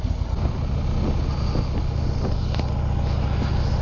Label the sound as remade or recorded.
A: recorded